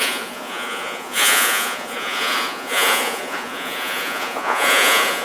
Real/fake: fake